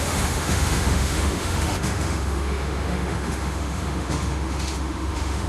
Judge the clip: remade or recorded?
remade